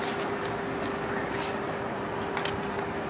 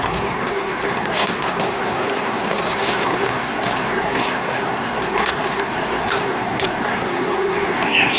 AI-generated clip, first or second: second